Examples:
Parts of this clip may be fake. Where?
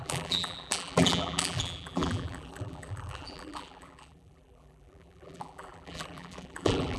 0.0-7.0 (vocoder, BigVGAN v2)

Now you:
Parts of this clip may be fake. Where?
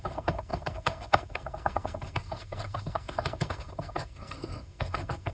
0.0-5.3 (codec, SNAC)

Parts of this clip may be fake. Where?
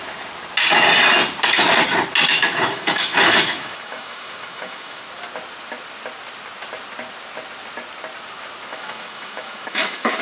2.3-5.0 (autoencoder, DAC-VAE); 8.7-10.2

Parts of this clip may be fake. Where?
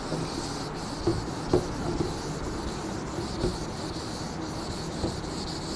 none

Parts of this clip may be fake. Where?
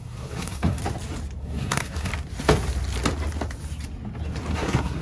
0.0-0.8 (codec, SNAC); 1.4-2.1; 4.5-5.0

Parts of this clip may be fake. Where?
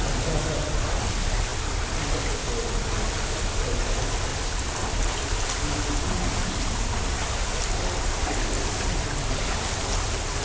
none